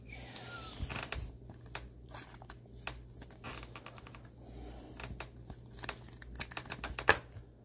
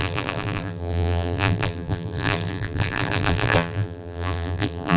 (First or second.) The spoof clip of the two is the second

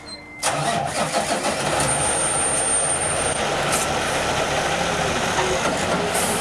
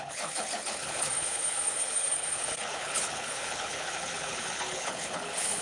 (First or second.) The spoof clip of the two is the second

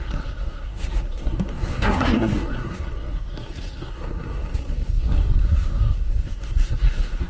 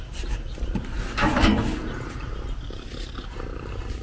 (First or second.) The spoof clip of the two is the first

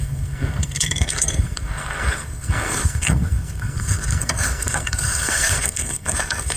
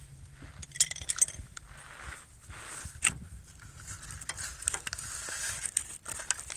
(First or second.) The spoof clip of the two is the first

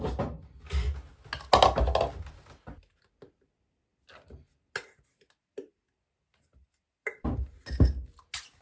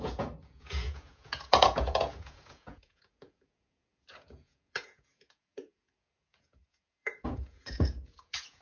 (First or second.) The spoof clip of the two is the second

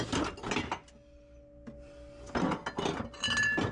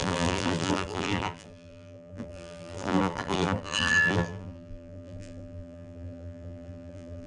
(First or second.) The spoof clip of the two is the second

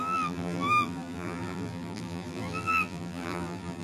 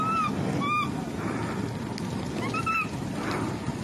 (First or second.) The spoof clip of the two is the first